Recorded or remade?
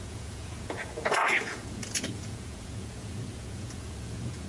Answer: remade